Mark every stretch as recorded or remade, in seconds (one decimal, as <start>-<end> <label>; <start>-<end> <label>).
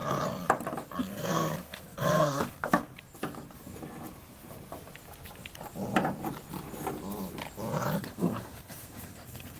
0.0-1.0 recorded; 1.0-2.9 remade; 2.9-8.0 recorded; 8.0-9.6 remade